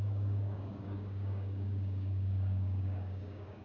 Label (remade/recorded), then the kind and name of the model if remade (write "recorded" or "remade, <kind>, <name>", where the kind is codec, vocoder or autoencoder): remade, codec, DAC